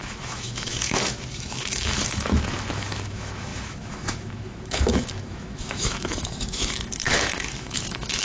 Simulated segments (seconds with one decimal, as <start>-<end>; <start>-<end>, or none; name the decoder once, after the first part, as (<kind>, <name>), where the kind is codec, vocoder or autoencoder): 0.0-8.2 (autoencoder, DAC-VAE)

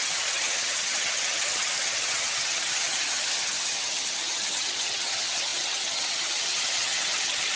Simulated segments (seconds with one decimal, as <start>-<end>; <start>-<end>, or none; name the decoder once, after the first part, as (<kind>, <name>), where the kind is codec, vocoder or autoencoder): 0.0-7.6 (vocoder, HiFi-GAN)

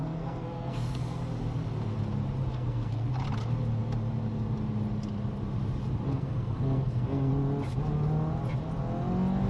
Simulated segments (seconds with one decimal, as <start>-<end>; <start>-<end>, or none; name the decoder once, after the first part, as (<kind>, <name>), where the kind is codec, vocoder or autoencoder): 0.0-1.2 (codec, SNAC); 2.5-3.1; 6.1-7.3

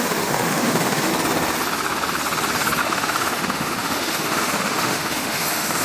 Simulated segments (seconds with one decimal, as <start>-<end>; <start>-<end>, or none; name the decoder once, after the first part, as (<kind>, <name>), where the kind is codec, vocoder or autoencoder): 0.0-1.1 (autoencoder, DAC-VAE); 2.8-5.8

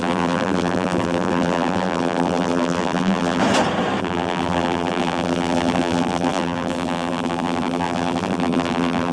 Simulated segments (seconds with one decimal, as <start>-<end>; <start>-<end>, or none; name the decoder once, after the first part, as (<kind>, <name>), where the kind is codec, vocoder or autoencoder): 0.0-3.4 (vocoder, BigVGAN v2); 4.0-9.1

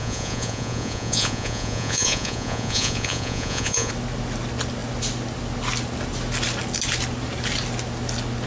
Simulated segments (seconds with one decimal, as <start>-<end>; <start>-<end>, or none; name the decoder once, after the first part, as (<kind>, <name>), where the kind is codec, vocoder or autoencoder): 0.0-3.9 (vocoder, Vocos)